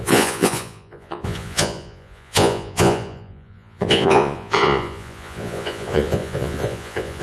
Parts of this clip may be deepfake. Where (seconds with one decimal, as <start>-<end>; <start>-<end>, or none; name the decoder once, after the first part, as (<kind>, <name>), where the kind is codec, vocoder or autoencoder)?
0.0-7.2 (vocoder, Vocos)

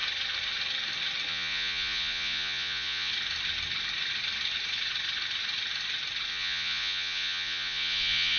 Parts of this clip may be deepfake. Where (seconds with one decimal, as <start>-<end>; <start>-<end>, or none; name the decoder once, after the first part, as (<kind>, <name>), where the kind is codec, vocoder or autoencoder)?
1.3-3.1 (vocoder, Vocos); 6.3-8.4

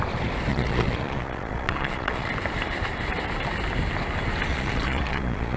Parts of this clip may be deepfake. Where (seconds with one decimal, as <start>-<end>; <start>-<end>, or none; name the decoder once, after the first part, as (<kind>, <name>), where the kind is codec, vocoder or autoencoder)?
0.5-2.3 (vocoder, Vocos); 4.5-5.6

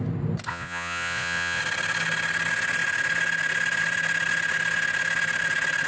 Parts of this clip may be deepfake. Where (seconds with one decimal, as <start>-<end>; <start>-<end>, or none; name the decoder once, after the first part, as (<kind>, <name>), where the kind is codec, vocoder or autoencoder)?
0.5-1.6 (vocoder, Vocos)

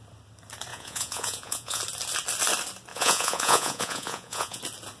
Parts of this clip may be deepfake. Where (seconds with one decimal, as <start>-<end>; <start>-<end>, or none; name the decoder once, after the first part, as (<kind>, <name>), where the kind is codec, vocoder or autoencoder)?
0.7-1.8 (vocoder, Vocos); 2.9-4.6

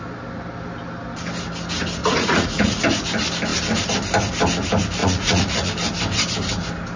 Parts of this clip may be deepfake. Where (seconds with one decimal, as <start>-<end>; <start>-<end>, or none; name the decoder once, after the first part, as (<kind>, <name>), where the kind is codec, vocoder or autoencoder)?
2.0-2.8 (vocoder, Vocos); 5.0-5.7

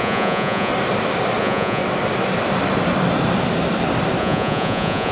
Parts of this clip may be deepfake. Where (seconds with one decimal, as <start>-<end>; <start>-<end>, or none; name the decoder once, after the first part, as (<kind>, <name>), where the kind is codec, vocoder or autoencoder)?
0.0-0.7 (vocoder, Vocos); 1.4-1.8; 4.2-5.1

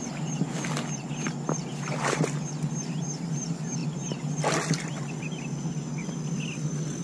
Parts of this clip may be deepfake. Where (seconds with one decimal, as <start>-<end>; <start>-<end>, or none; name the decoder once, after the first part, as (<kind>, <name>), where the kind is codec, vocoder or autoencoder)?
none